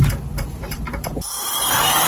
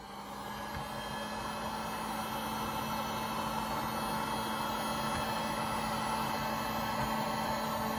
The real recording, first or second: second